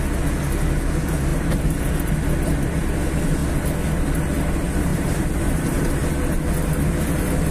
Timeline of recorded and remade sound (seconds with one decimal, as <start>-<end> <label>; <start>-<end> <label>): 0.0-1.3 recorded; 1.3-1.8 remade; 1.8-4.9 recorded; 4.9-6.1 remade; 6.1-7.5 recorded